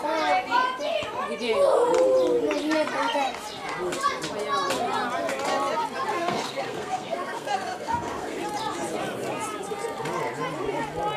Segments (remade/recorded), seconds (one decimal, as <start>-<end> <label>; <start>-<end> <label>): 0.0-6.1 recorded; 6.1-8.4 remade; 8.4-11.2 recorded